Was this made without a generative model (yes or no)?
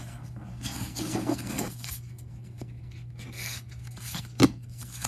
no